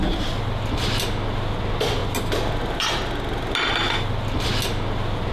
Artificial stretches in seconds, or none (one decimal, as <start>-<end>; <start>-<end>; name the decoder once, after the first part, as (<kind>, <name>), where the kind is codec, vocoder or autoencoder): none